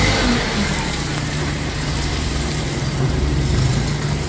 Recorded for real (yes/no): no